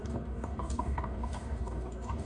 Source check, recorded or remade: remade